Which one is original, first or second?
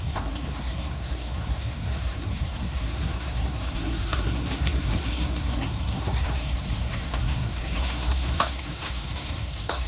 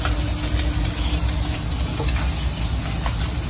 second